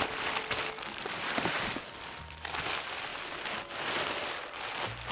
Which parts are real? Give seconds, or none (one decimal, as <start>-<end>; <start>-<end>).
0.0-5.1